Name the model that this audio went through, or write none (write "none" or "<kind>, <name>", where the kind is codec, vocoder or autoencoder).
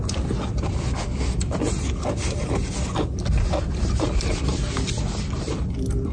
none